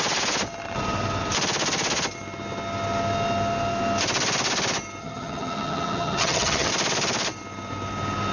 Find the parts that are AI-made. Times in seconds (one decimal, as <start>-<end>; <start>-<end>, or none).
5.0-6.7